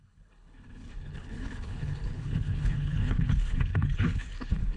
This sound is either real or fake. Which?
fake